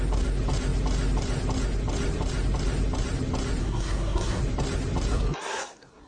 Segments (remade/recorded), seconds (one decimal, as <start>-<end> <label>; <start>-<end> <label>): 0.0-3.6 recorded; 3.6-4.4 remade; 4.4-5.1 recorded; 5.1-6.1 remade